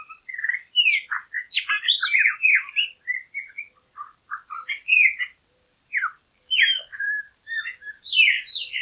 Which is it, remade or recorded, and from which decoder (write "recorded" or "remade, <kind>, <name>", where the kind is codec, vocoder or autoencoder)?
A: remade, vocoder, BigVGAN v2